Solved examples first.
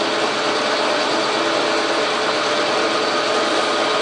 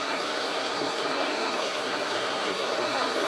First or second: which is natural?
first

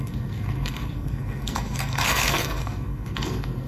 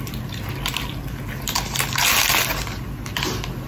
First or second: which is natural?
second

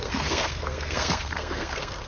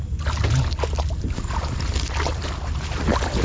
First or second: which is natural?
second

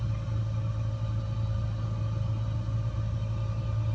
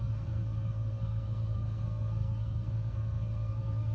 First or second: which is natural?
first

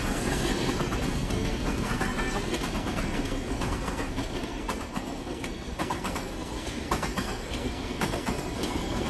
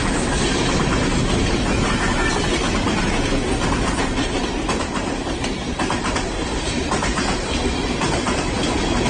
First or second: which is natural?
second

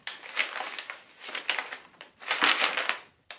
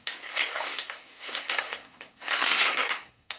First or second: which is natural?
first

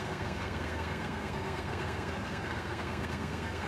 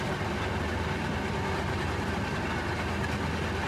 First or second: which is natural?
second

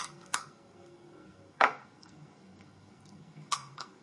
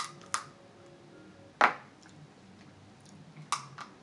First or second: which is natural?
second